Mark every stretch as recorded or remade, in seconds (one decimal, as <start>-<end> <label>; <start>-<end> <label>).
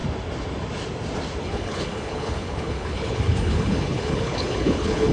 0.0-1.4 recorded; 1.4-5.1 remade